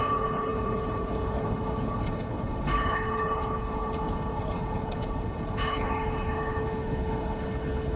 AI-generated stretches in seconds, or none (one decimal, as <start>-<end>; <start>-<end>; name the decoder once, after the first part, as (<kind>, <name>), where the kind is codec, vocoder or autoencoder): 0.0-8.0 (codec, HILCodec)